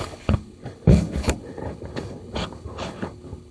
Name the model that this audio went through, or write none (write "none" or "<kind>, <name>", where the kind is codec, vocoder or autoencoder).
codec, HILCodec